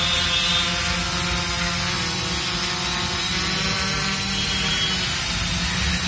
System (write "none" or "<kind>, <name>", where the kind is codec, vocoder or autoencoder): none